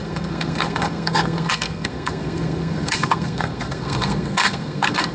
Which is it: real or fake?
fake